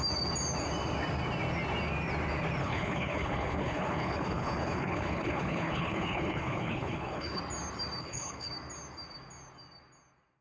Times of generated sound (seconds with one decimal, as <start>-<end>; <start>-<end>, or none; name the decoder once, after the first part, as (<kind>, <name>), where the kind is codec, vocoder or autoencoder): 2.6-7.4 (codec, HILCodec); 8.0-8.5